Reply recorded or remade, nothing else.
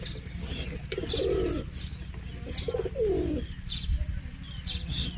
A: recorded